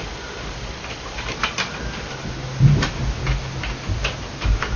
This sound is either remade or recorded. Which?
recorded